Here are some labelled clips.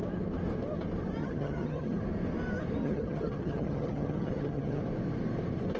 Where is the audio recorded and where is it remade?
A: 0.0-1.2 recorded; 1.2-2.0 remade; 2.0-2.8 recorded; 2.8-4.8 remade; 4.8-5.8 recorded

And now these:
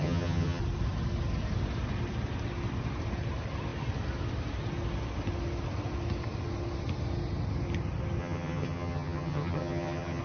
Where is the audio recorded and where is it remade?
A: 0.0-0.6 remade; 0.6-8.2 recorded; 8.2-10.2 remade

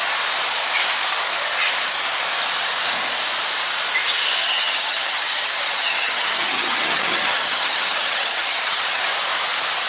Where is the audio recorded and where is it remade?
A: 0.0-4.4 recorded; 4.4-9.0 remade; 9.0-9.9 recorded

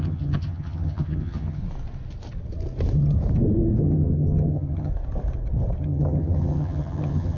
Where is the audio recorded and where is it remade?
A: 0.0-1.6 remade; 1.6-3.8 recorded; 3.8-4.9 remade; 4.9-5.8 recorded; 5.8-7.4 remade